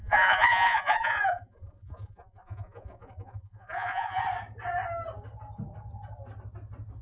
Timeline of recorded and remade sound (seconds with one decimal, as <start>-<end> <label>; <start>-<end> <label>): 0.0-4.2 remade; 4.2-7.0 recorded